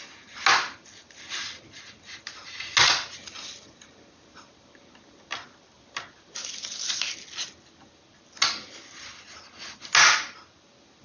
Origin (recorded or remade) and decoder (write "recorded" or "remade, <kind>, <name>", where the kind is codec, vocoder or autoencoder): recorded